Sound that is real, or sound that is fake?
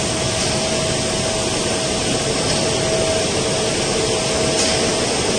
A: real